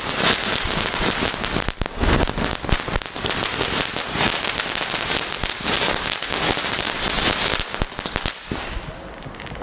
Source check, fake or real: real